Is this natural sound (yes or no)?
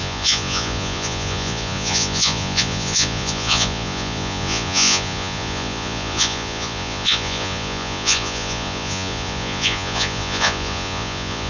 no